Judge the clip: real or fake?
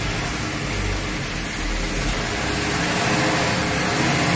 real